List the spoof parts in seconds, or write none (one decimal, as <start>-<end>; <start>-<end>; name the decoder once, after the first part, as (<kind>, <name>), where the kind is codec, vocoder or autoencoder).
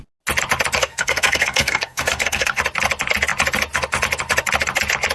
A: 0.8-2.6 (codec, SNAC)